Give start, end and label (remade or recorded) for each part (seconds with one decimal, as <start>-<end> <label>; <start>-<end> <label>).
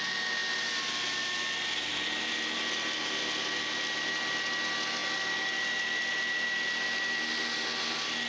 0.0-8.3 recorded